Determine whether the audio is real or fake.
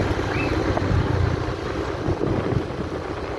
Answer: real